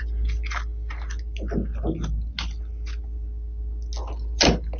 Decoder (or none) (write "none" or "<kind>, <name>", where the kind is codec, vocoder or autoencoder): none